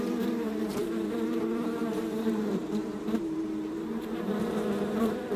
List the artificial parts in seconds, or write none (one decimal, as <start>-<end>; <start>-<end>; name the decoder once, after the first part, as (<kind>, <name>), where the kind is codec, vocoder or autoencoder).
0.0-5.4 (vocoder, BigVGAN v2)